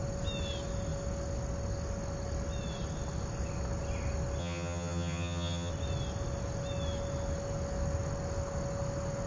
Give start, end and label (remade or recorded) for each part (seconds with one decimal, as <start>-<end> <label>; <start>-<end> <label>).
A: 0.0-4.4 recorded; 4.4-5.7 remade; 5.7-9.3 recorded